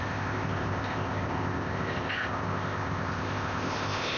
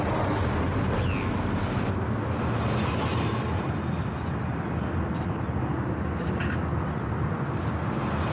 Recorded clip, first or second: second